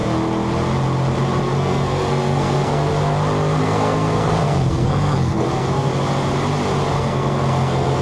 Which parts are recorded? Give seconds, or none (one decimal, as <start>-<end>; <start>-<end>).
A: 0.0-1.4; 2.9-3.6; 5.9-6.9